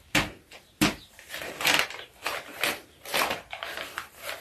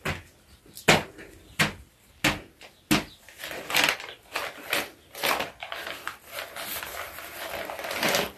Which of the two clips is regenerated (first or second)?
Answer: first